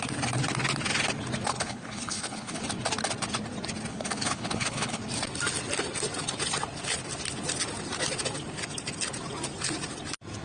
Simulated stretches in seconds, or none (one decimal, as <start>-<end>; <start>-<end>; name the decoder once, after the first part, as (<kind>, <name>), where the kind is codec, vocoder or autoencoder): 1.5-2.6 (codec, HILCodec); 3.9-5.0